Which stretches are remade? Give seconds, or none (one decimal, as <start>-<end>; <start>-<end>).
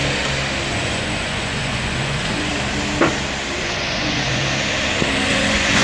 0.7-2.5; 3.6-4.4; 5.3-5.8